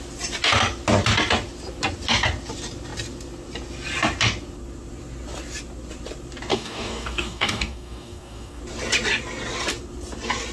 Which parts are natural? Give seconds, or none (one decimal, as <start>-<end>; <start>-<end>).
0.0-6.5; 8.6-10.5